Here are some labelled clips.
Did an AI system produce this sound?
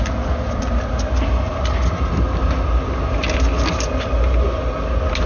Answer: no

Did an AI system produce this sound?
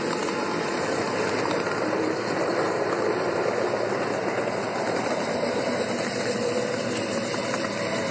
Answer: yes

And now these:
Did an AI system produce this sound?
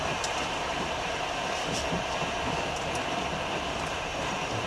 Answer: yes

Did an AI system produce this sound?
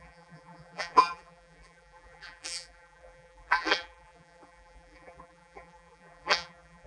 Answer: yes